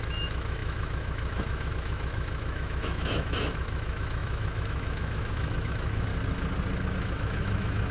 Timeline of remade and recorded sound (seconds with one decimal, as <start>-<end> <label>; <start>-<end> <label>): 0.0-6.1 remade; 6.1-7.0 recorded; 7.0-7.9 remade